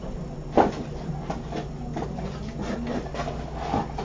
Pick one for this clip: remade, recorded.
recorded